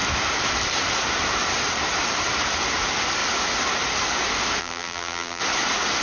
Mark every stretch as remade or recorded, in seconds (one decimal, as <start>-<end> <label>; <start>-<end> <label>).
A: 0.0-4.6 recorded; 4.6-5.4 remade; 5.4-6.0 recorded